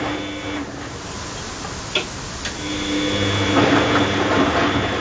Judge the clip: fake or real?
real